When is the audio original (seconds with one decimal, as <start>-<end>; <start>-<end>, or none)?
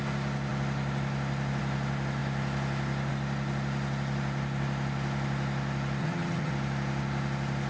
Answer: 0.0-6.0; 6.5-7.7